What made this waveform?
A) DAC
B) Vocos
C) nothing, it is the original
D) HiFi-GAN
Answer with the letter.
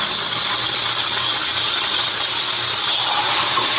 C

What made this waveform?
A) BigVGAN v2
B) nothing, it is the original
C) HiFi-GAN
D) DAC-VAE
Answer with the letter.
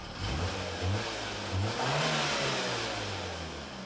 B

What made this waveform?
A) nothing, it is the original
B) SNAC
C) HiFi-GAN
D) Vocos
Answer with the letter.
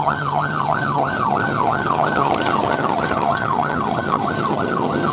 C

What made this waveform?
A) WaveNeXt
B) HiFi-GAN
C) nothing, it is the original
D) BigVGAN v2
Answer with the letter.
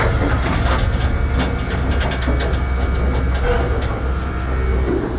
C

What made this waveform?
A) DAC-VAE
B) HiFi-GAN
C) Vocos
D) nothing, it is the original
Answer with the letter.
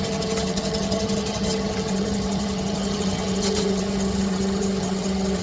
B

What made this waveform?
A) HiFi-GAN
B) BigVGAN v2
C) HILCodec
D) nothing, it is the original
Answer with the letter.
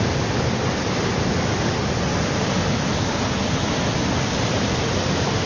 D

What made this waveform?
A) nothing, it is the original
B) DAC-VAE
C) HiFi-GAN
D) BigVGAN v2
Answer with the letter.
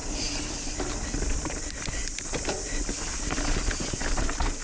A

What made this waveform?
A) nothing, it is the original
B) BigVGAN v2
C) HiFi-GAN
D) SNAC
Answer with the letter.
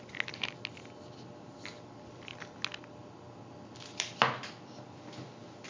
A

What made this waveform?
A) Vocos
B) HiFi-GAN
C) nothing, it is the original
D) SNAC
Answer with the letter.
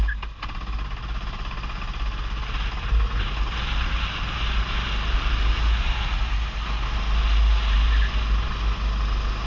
C